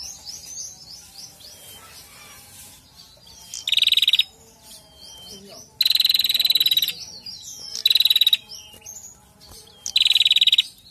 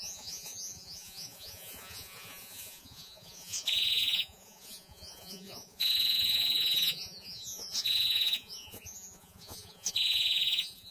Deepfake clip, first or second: second